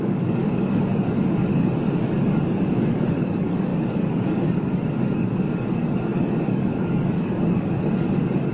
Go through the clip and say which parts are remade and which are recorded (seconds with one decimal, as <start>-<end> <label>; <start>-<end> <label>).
0.0-8.5 remade